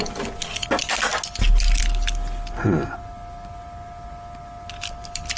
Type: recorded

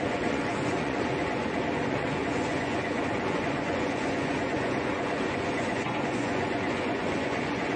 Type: remade